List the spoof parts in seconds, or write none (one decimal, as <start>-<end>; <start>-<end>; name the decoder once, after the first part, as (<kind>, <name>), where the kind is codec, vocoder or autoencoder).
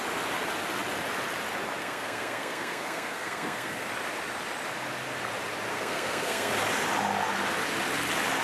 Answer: 1.8-3.9 (codec, SNAC); 5.7-6.5